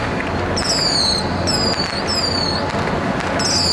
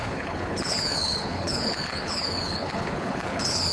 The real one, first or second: first